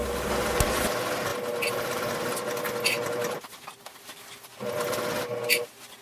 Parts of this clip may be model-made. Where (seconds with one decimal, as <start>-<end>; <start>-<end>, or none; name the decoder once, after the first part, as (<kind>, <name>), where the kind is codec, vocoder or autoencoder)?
none